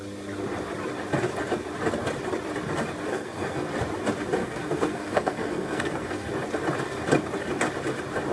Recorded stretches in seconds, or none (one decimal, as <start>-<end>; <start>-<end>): 0.0-3.1; 3.7-4.4; 6.3-8.3